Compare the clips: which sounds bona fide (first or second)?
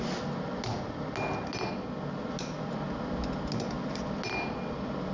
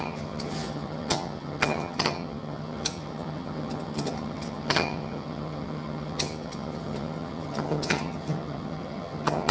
first